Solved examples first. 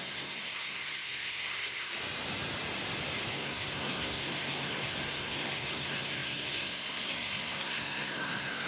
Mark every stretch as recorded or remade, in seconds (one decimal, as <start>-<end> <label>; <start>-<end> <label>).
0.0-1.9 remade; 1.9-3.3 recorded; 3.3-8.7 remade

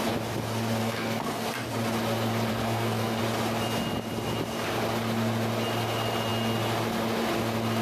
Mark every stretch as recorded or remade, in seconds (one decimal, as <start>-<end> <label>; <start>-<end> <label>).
0.0-0.8 recorded; 0.8-1.8 remade; 1.8-2.5 recorded; 2.5-3.2 remade; 3.2-7.8 recorded

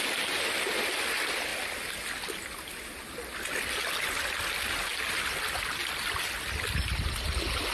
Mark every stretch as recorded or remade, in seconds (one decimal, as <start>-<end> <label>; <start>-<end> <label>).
0.0-7.7 recorded

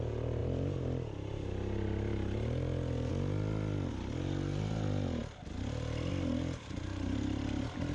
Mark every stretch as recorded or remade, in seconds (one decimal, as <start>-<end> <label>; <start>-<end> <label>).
0.0-7.9 recorded

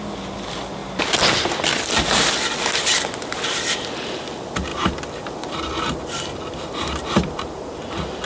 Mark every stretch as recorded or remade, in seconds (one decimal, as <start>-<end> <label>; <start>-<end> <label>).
0.0-8.3 recorded

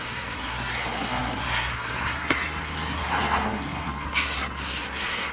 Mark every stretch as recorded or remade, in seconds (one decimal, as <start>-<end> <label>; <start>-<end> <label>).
0.0-5.3 remade

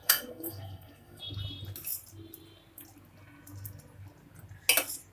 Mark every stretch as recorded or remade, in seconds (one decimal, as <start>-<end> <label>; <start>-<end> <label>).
0.0-1.2 remade; 1.2-5.1 recorded

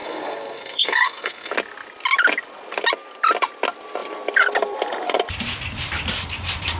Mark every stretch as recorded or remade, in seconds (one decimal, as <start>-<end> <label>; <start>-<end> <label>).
0.0-1.5 remade; 1.5-6.8 recorded